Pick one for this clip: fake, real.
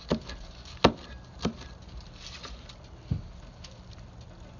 real